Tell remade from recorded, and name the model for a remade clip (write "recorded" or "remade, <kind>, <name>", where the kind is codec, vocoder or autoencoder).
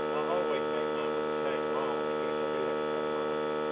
recorded